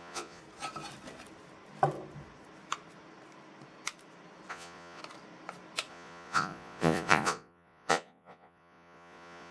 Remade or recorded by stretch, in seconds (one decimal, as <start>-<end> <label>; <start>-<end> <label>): 0.0-0.4 remade; 0.4-4.5 recorded; 4.5-5.0 remade; 5.0-5.9 recorded; 5.9-9.5 remade